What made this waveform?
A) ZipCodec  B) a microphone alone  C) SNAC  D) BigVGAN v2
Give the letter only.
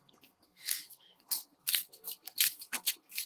C